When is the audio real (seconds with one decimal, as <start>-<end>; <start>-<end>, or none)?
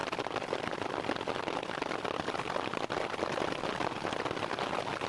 0.0-5.1